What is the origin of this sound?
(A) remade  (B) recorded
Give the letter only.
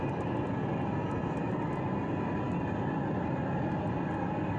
B